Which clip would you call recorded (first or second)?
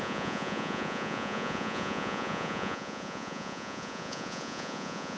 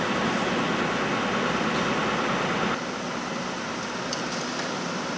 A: second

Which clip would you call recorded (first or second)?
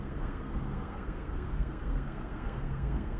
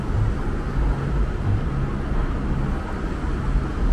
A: second